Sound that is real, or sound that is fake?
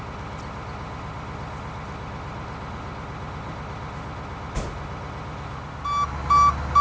real